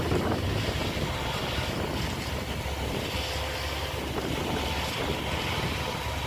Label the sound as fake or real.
real